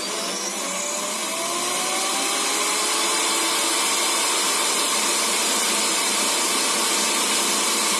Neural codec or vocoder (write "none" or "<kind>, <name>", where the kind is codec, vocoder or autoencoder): none